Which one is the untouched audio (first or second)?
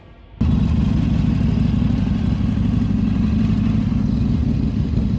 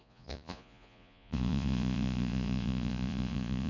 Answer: first